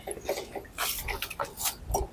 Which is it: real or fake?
real